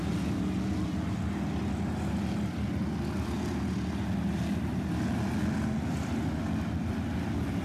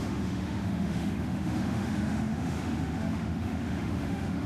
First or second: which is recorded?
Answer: first